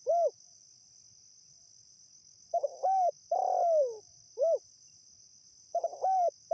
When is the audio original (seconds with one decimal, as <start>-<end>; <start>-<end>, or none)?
0.0-6.5